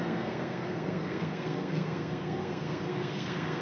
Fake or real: fake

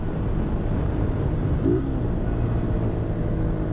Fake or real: real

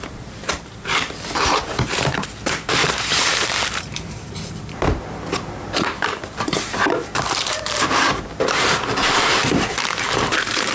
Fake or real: fake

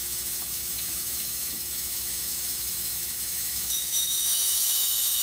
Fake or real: fake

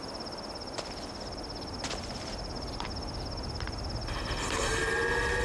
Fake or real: real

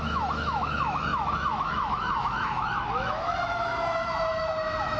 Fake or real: fake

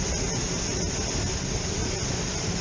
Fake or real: real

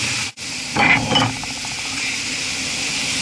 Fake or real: real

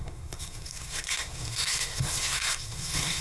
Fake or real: fake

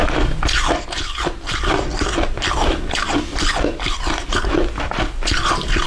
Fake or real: real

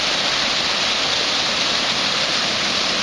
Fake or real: real